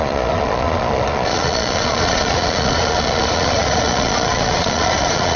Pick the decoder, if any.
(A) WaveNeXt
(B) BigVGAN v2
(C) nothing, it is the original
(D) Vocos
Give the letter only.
D